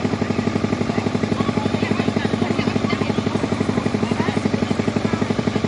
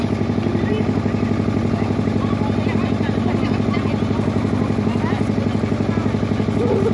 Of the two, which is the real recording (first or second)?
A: second